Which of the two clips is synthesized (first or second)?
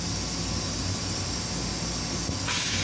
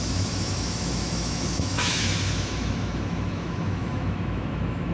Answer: second